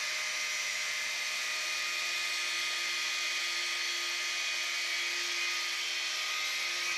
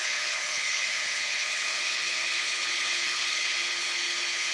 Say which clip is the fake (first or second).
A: second